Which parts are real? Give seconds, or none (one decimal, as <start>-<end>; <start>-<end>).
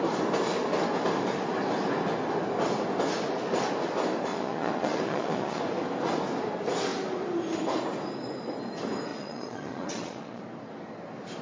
0.0-4.3; 5.6-9.1; 10.4-11.4